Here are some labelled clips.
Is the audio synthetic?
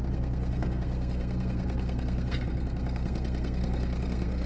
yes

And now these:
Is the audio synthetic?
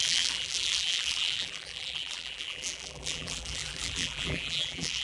yes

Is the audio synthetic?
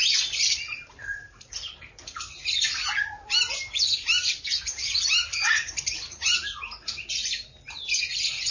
no